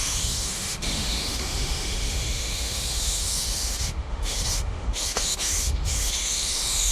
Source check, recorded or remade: remade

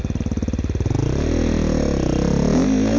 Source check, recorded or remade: recorded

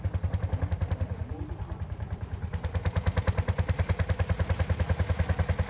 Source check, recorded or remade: recorded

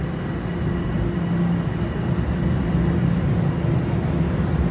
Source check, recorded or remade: recorded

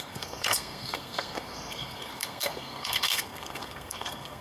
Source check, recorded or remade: remade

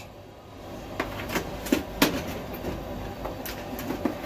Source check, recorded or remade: recorded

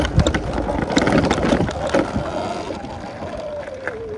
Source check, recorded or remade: recorded